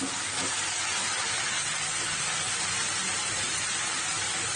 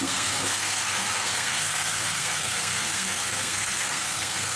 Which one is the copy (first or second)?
second